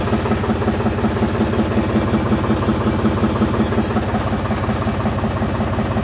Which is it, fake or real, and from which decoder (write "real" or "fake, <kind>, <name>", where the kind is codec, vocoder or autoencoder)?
real